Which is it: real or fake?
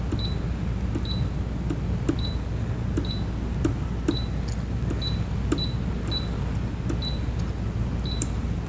real